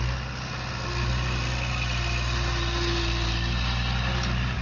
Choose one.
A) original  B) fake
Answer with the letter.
A